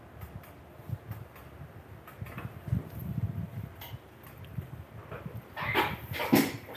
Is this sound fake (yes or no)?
no